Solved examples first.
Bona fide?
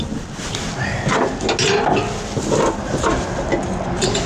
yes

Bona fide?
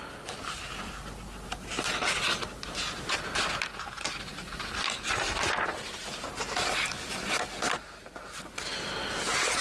yes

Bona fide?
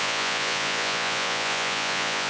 no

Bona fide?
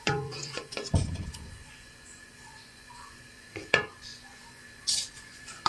no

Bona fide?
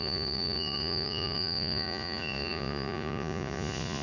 no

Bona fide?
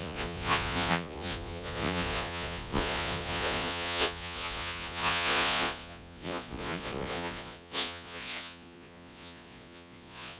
no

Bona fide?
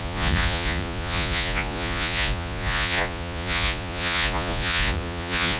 no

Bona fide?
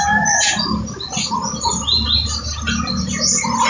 yes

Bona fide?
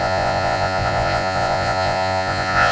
no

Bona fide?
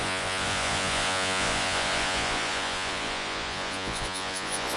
no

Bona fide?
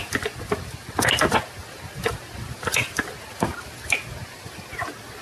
yes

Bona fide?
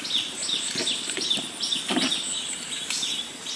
yes